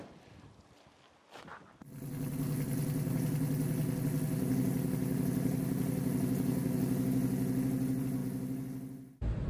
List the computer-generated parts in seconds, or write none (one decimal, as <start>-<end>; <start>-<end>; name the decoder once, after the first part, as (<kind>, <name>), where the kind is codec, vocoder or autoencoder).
none